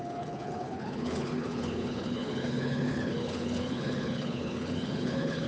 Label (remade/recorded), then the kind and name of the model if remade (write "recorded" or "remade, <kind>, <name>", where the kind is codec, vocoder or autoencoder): remade, codec, HILCodec